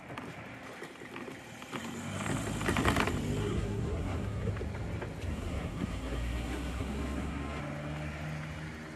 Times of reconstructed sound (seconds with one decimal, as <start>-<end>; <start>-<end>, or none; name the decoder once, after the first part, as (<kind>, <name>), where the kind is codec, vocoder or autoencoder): 3.4-4.5 (codec, SNAC); 5.3-7.6